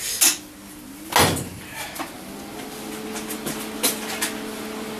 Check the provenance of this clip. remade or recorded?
recorded